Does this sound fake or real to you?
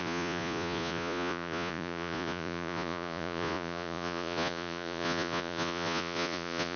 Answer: fake